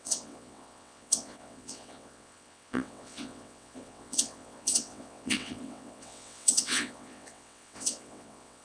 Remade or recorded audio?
remade